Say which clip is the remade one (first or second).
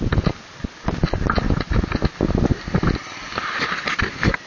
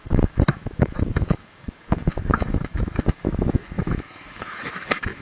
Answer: second